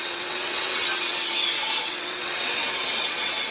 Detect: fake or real fake